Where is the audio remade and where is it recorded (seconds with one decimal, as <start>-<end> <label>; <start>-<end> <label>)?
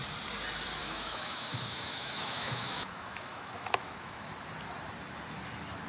0.0-0.8 recorded; 0.8-4.3 remade; 4.3-5.9 recorded